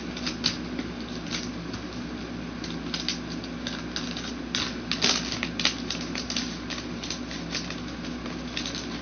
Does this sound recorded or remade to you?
recorded